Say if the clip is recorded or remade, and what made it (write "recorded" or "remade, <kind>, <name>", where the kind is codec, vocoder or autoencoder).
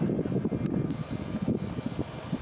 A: recorded